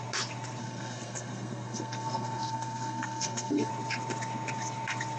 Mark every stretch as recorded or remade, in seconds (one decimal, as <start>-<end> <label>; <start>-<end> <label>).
0.0-0.6 recorded; 0.6-3.7 remade; 3.7-5.2 recorded

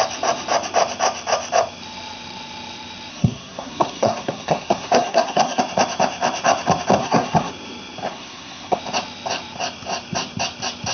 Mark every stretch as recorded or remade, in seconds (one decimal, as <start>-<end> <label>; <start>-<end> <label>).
0.0-3.1 recorded; 3.1-5.6 remade; 5.6-7.0 recorded; 7.0-7.5 remade; 7.5-8.1 recorded; 8.1-8.8 remade; 8.8-10.9 recorded